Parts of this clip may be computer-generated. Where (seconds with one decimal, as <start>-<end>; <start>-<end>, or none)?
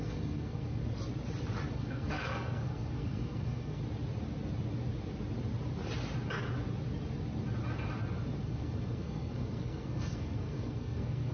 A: 0.0-0.8; 1.7-3.8; 8.4-11.3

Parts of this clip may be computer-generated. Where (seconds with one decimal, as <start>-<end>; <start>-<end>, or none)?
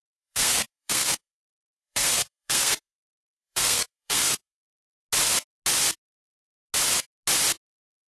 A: 0.0-4.7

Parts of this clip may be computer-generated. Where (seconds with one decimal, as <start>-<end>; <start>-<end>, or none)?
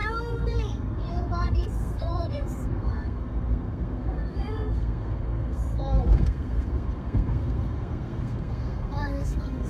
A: 0.0-9.7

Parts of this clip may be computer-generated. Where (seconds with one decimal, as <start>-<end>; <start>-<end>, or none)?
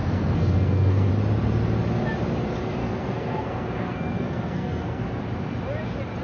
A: 0.0-1.1; 2.8-5.0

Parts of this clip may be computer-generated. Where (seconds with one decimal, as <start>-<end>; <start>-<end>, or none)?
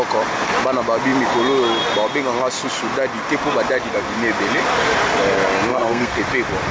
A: 5.7-6.2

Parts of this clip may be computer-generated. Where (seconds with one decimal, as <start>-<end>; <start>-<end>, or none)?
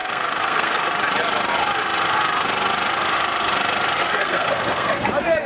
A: 0.0-0.8; 4.0-5.1